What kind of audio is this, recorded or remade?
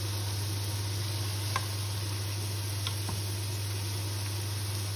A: recorded